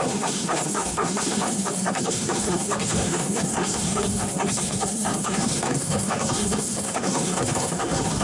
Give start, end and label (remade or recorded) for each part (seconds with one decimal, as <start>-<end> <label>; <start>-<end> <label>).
0.0-8.2 remade